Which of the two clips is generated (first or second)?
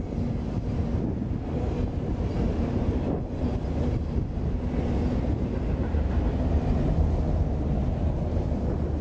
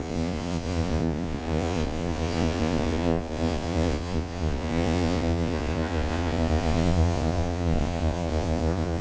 second